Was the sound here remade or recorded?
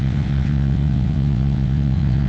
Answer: remade